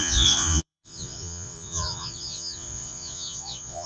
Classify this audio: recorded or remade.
remade